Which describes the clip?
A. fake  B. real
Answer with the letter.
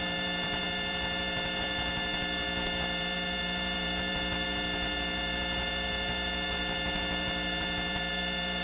A